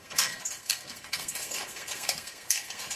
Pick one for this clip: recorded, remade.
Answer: remade